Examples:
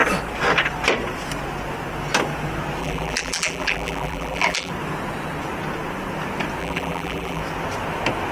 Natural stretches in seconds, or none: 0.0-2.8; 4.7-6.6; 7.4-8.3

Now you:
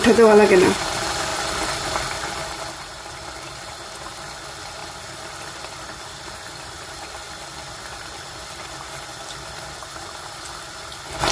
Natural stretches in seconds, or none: 0.0-1.3; 3.7-4.8; 9.6-11.3

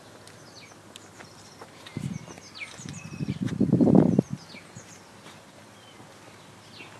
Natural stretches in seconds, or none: none

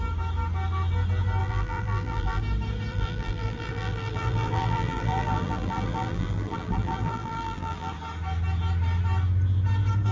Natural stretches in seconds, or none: 0.0-1.4; 2.4-2.9; 7.9-10.1